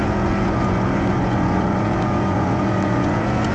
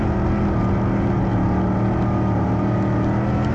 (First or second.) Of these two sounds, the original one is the second